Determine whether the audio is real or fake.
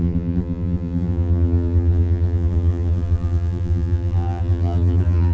fake